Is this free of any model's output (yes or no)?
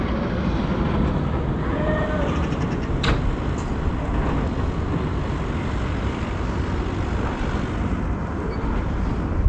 yes